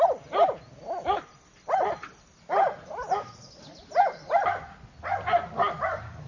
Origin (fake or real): real